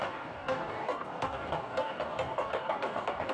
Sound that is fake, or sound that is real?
fake